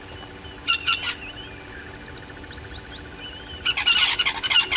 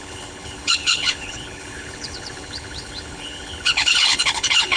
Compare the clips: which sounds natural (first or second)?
first